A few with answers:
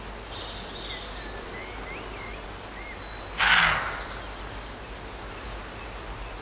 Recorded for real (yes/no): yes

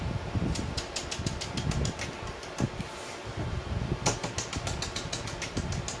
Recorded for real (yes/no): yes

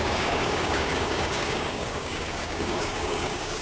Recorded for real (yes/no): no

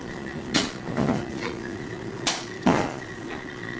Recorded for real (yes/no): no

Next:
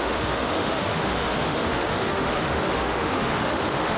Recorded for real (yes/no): no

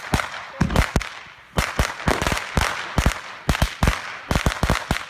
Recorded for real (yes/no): yes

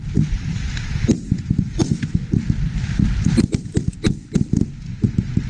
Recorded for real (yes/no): yes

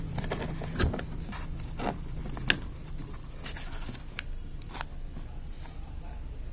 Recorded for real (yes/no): yes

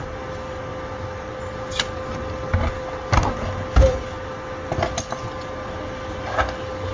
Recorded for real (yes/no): yes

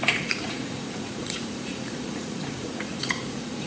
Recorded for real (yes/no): no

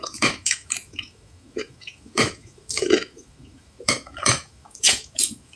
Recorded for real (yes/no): no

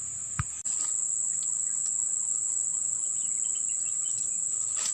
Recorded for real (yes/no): yes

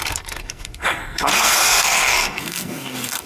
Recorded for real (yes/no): no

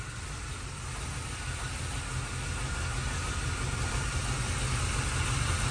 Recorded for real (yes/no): yes